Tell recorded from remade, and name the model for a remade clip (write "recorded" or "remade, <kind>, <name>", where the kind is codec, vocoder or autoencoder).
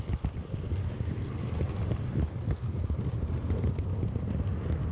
recorded